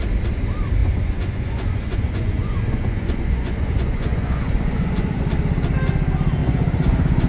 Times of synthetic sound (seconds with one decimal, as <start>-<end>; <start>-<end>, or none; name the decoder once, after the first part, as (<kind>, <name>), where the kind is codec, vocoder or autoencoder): 0.8-5.2 (vocoder, Vocos); 6.4-7.3